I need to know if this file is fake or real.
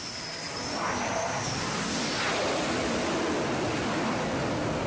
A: real